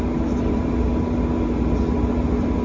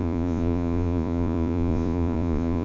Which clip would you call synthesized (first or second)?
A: second